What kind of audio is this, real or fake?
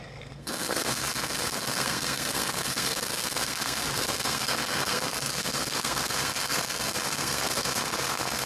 fake